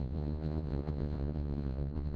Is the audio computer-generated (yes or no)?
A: yes